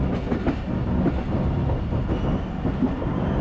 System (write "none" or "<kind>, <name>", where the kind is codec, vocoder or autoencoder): none